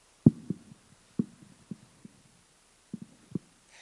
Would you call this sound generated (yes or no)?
no